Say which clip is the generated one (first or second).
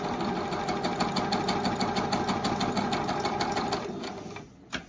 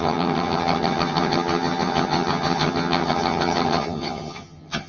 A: second